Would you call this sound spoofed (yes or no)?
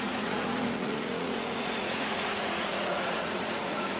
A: yes